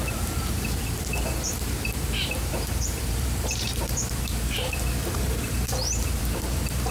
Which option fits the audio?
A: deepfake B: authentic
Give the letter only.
A